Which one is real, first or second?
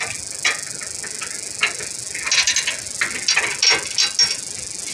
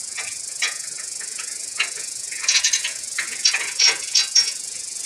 first